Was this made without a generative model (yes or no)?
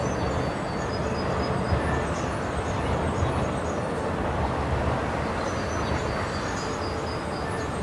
yes